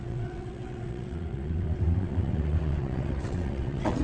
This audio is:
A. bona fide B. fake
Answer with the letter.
B